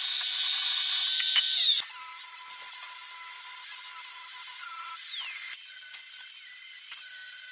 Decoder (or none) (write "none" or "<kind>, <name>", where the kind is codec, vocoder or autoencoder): none